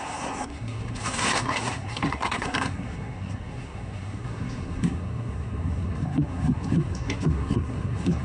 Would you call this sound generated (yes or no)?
yes